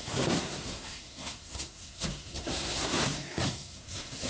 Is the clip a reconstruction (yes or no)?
yes